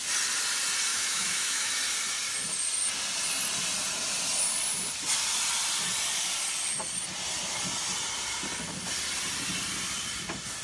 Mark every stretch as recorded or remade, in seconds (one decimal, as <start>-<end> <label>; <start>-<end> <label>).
0.0-0.9 recorded; 0.9-1.7 remade; 1.7-10.6 recorded